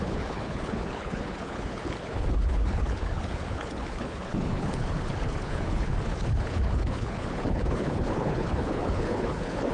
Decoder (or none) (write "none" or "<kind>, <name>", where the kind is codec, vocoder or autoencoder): codec, HILCodec